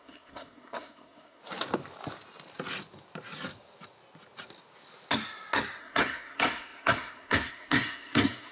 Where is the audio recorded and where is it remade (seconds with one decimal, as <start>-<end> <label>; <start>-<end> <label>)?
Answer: 0.0-1.4 remade; 1.4-5.8 recorded; 5.8-8.5 remade